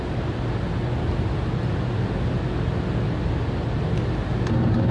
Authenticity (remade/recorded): recorded